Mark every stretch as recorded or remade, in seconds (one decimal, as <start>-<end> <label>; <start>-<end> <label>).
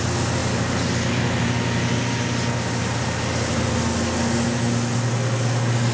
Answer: 0.0-5.9 recorded